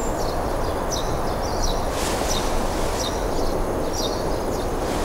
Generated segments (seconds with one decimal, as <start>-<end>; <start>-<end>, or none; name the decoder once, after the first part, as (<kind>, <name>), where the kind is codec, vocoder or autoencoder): none